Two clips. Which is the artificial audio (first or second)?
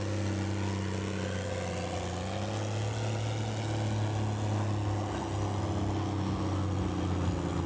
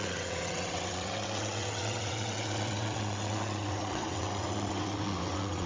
second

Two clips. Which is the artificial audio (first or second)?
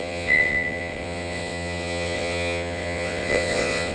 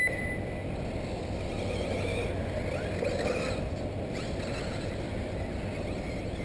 first